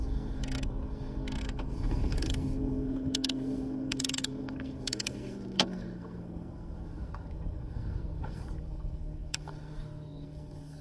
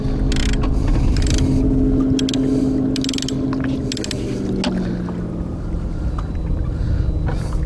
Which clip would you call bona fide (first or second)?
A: second